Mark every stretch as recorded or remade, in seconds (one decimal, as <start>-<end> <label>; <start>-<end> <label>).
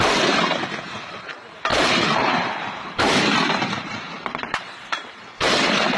0.0-6.0 remade